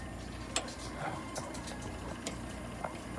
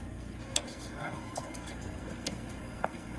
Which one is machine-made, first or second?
second